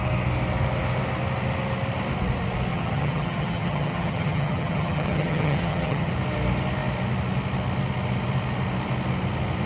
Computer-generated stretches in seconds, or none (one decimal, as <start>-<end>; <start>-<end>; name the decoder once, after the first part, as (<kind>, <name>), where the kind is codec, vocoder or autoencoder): 2.7-6.1 (vocoder, HiFi-GAN)